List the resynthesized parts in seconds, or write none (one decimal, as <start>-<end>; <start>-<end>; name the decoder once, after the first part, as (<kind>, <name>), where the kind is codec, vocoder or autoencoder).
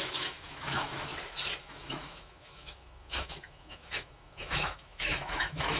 0.0-1.1 (autoencoder, DAC-VAE); 1.6-5.8